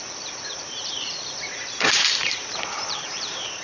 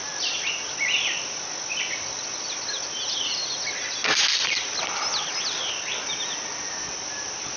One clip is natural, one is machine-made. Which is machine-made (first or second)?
first